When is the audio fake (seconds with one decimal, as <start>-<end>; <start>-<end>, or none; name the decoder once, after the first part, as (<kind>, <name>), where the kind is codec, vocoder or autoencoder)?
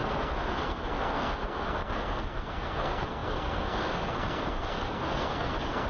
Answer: 0.0-5.9 (codec, SNAC)